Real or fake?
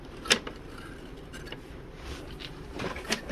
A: fake